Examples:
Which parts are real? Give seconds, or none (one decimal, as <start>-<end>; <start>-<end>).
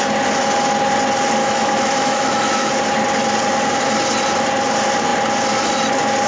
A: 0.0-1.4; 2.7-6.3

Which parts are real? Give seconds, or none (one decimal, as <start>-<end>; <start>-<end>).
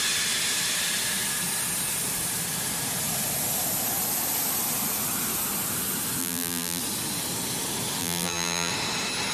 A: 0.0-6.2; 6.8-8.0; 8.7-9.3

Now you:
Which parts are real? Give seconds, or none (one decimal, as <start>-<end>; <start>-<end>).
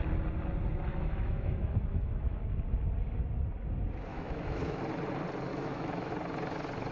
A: 0.0-0.9; 2.5-4.1; 4.8-5.5; 6.1-6.9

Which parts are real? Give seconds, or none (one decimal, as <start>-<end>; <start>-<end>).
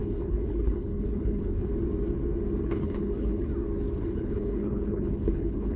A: 1.7-2.6; 3.5-4.0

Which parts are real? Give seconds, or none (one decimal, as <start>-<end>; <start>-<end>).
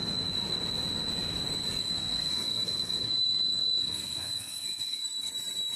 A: 0.0-1.8; 5.3-5.8